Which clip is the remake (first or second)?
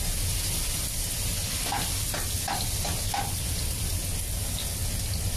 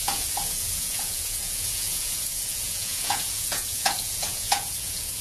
second